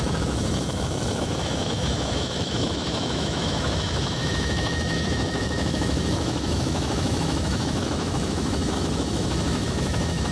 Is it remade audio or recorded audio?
remade